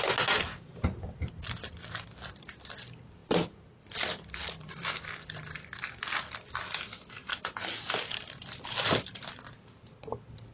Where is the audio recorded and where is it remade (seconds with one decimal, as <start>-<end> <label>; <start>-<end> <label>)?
0.0-10.5 recorded

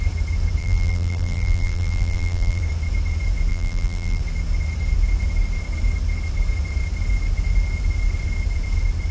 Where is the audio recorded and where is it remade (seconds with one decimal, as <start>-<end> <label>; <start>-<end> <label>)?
0.0-0.6 recorded; 0.6-2.6 remade; 2.6-3.5 recorded; 3.5-4.2 remade; 4.2-9.1 recorded

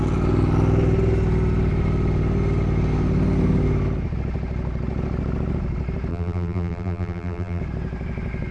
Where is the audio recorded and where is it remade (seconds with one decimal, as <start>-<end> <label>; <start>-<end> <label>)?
0.0-6.1 recorded; 6.1-7.6 remade; 7.6-8.5 recorded

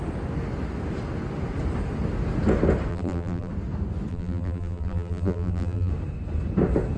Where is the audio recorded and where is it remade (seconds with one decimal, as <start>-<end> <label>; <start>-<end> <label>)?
0.0-2.9 recorded; 2.9-3.5 remade; 3.5-4.1 recorded; 4.1-5.9 remade; 5.9-7.0 recorded

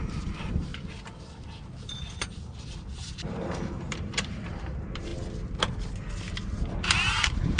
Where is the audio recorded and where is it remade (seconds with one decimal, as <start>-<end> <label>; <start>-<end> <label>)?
0.0-0.7 remade; 0.7-1.9 recorded; 1.9-5.1 remade; 5.1-6.7 recorded; 6.7-7.6 remade

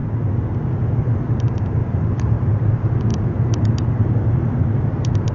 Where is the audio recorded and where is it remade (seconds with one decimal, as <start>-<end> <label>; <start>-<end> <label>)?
0.0-1.2 recorded; 1.2-5.3 remade